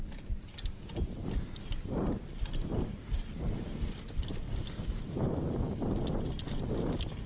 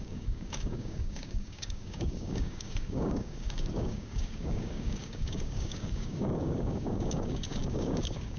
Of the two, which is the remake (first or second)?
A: second